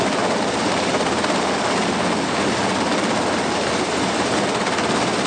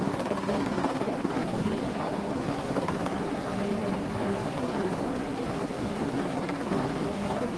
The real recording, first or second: first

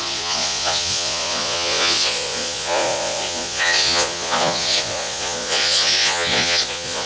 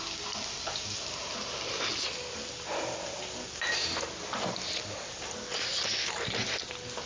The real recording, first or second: second